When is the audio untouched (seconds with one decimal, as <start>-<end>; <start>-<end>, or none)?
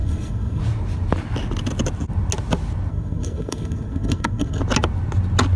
0.6-2.9; 4.6-5.6